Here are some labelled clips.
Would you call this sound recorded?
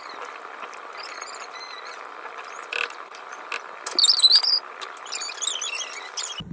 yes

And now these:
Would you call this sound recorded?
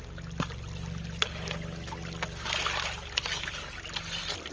yes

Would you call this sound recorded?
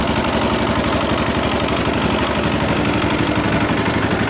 yes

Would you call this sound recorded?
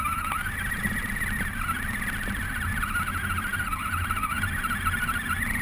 yes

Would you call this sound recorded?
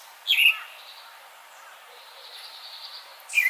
yes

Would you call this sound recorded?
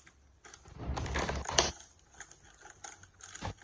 yes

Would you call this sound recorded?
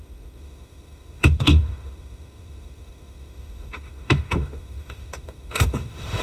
no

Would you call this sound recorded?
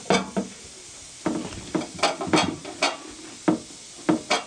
yes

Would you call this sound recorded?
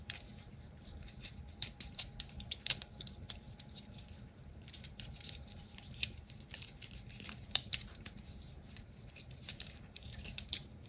no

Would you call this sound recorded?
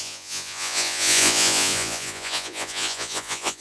no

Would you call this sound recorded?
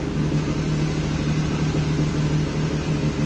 yes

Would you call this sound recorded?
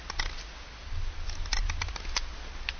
yes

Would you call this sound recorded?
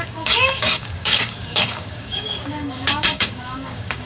no